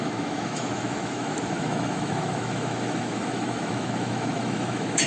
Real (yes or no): no